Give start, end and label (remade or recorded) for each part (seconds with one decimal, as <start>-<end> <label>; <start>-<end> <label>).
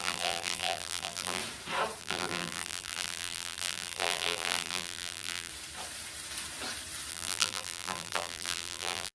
0.0-1.4 remade; 1.4-2.0 recorded; 2.0-5.5 remade; 5.5-7.1 recorded; 7.1-9.1 remade